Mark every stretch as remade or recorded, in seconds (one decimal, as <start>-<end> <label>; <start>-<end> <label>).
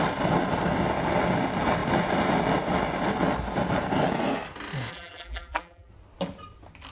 0.0-4.9 recorded; 4.9-5.9 remade; 5.9-6.9 recorded